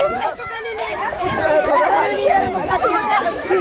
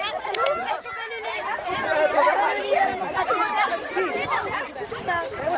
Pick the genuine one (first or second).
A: second